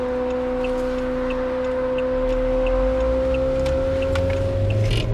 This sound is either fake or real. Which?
real